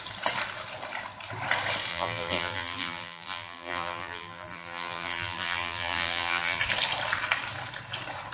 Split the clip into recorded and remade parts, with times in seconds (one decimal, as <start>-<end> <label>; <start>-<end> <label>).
0.0-1.9 recorded; 1.9-6.6 remade; 6.6-8.3 recorded